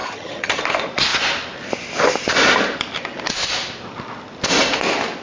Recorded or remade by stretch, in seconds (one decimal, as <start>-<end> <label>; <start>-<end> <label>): 0.0-0.6 remade; 0.6-5.2 recorded